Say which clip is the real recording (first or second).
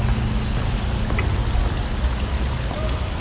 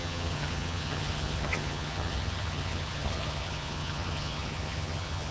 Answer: first